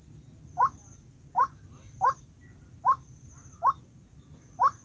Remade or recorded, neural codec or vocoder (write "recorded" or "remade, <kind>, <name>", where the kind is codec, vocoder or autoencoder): recorded